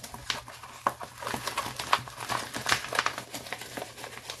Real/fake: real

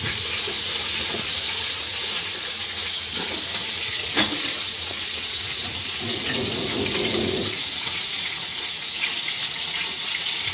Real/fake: fake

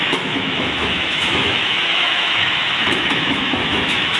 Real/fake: fake